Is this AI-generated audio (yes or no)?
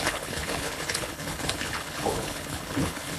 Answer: yes